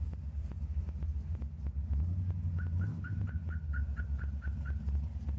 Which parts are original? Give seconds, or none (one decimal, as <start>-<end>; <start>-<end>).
0.0-5.4